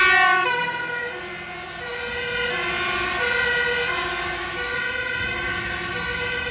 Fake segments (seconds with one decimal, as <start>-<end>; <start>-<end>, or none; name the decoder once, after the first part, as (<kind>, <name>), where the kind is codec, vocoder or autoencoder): none